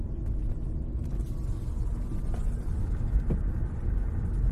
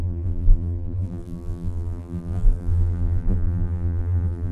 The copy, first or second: second